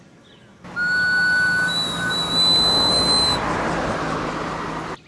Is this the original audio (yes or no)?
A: yes